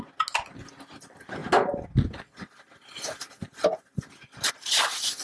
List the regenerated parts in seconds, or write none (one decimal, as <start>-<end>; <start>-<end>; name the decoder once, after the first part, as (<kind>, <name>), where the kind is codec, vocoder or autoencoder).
none